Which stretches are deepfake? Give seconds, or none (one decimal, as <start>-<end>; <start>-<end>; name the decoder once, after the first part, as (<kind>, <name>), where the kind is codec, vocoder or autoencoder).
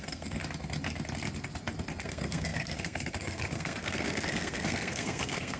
0.0-0.4 (codec, SNAC); 2.0-5.6